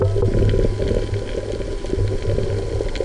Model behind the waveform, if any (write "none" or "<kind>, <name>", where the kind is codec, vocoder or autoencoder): none